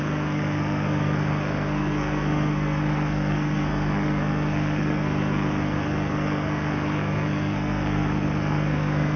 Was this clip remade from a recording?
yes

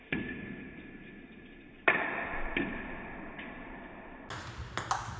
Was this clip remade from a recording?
no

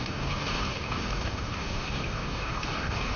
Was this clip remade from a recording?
yes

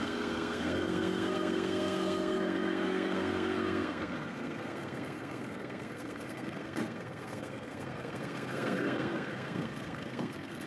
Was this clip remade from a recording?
yes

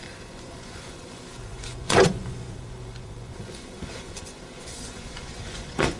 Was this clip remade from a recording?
yes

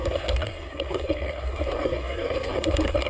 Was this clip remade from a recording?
yes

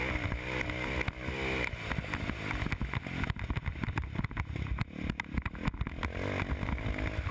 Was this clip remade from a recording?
no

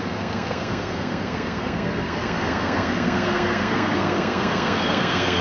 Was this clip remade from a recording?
yes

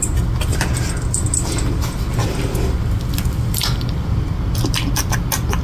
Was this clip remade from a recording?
no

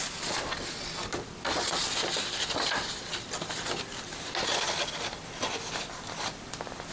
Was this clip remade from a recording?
no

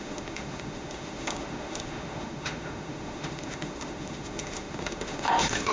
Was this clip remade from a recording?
yes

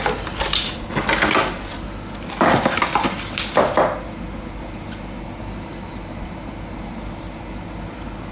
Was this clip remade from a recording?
no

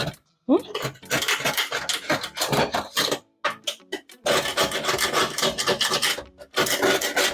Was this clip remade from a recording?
no